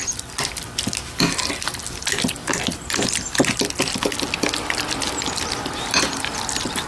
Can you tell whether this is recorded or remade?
recorded